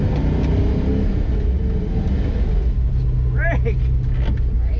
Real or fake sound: real